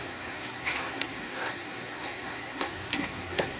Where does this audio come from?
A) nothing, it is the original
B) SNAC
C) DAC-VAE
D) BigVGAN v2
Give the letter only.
B